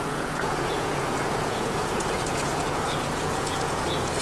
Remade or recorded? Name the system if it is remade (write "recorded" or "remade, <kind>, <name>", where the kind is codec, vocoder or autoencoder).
remade, vocoder, Vocos